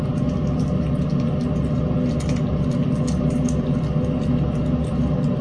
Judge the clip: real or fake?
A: real